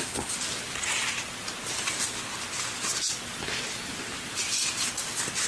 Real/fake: real